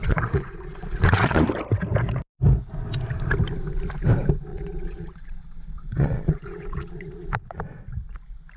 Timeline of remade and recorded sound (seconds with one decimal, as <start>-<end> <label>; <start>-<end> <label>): 0.0-1.5 remade; 1.5-4.5 recorded; 4.5-7.6 remade; 7.6-8.6 recorded